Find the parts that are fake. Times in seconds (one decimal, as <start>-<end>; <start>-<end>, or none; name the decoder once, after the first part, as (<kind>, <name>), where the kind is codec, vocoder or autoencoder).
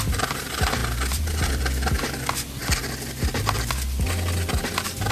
0.0-2.6 (vocoder, BigVGAN v2); 4.6-5.1